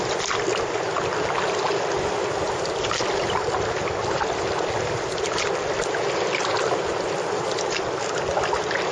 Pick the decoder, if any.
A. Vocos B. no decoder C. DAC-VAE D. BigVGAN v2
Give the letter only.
B